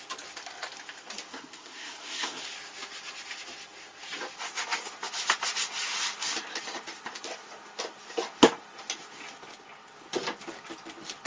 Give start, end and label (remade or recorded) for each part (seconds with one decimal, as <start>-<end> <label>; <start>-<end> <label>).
0.0-1.3 recorded; 1.3-2.4 remade; 2.4-11.3 recorded